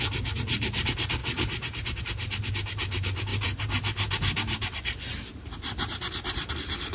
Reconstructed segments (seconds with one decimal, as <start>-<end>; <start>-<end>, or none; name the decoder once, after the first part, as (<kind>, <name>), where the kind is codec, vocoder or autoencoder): 0.0-6.9 (vocoder, BigVGAN v2)